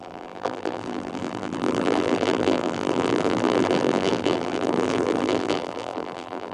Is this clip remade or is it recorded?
remade